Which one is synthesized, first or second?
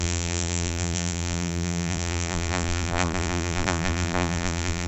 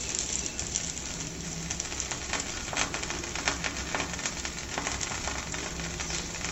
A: first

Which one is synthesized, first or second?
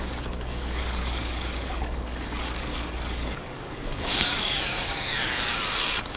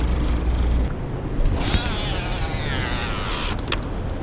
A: first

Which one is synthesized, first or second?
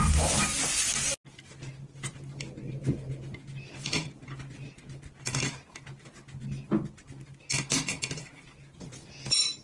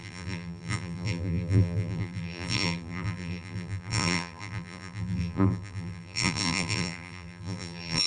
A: second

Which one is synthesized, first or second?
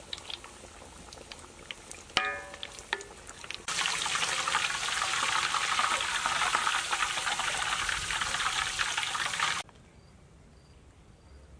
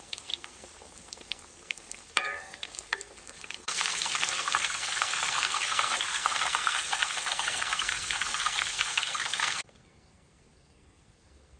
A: second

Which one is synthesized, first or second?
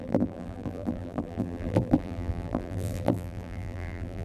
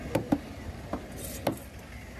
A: first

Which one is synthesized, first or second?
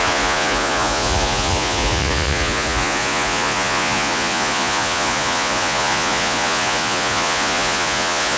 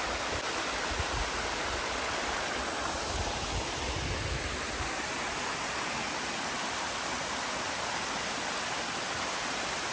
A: first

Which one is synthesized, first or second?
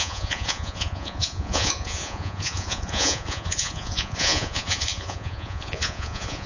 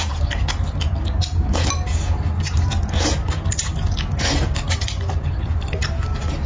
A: first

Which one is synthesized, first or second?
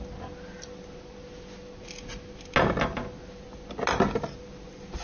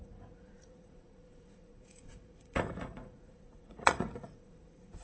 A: second